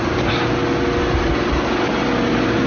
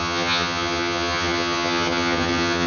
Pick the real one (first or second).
first